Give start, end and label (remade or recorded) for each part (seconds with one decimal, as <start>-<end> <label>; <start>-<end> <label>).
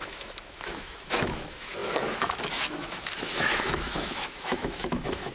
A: 0.0-5.3 remade